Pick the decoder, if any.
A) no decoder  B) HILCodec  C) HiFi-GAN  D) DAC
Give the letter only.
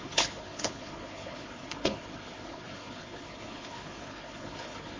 B